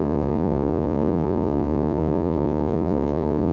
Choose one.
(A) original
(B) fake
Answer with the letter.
B